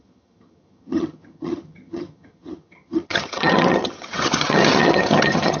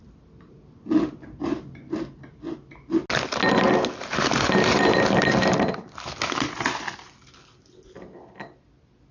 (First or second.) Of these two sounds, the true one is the second